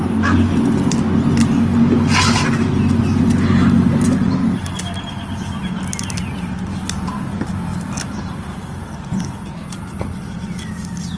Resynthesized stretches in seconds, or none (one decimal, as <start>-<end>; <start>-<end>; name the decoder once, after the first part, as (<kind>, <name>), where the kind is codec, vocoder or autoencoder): none